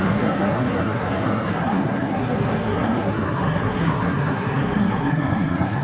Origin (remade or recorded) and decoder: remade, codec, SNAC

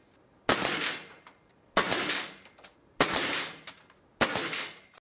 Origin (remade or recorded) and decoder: recorded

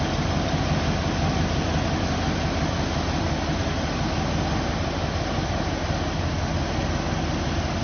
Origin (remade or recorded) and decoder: recorded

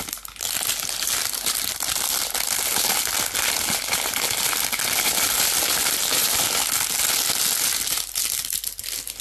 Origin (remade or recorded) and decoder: recorded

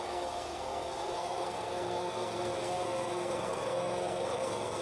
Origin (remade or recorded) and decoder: remade, codec, SNAC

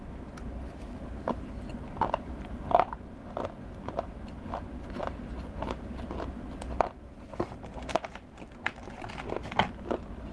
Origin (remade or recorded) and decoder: recorded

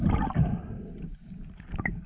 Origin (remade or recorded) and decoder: recorded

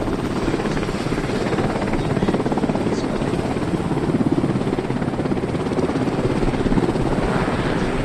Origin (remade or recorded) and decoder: recorded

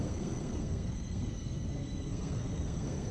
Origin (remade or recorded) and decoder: remade, codec, SNAC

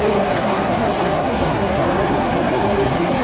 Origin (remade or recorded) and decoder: remade, codec, SNAC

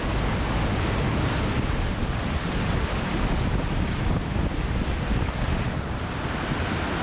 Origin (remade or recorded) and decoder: recorded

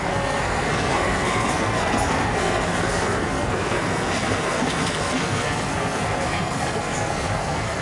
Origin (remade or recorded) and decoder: remade, codec, SNAC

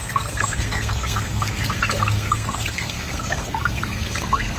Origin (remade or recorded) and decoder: remade, codec, SNAC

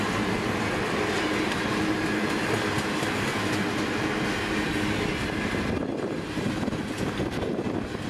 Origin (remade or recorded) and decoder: recorded